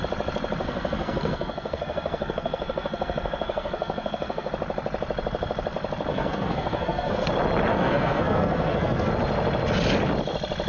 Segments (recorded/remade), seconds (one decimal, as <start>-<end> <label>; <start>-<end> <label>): 0.0-0.6 recorded; 0.6-4.5 remade; 4.5-6.1 recorded; 6.1-7.3 remade; 7.3-7.7 recorded; 7.7-9.1 remade; 9.1-10.7 recorded